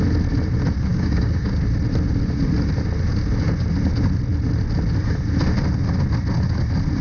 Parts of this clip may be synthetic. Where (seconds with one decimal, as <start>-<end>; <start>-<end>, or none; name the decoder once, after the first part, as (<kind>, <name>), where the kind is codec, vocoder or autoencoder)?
0.9-1.5 (codec, DAC)